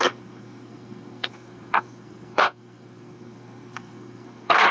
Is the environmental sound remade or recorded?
remade